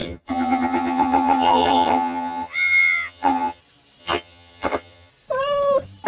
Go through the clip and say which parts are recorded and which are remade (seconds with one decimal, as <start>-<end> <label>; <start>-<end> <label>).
0.0-3.6 remade; 3.6-4.0 recorded; 4.0-5.1 remade; 5.1-6.1 recorded